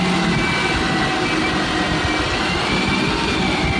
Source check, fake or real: real